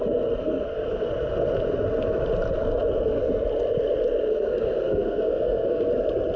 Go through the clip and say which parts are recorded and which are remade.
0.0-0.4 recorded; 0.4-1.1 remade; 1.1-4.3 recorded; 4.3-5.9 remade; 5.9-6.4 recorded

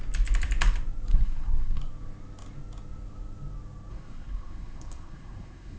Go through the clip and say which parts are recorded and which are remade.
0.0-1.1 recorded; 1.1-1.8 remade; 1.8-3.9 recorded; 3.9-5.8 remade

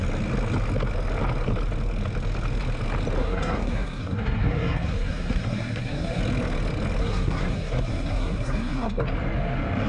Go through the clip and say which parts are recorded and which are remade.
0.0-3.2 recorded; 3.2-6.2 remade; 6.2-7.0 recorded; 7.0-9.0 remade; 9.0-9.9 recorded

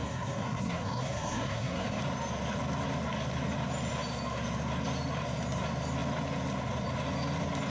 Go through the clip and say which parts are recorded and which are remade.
0.0-2.0 remade; 2.0-7.7 recorded

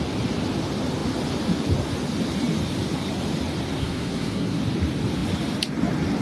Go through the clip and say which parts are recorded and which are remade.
0.0-3.8 recorded; 3.8-4.6 remade; 4.6-6.2 recorded